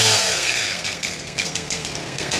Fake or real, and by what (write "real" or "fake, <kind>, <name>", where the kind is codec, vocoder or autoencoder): fake, codec, SNAC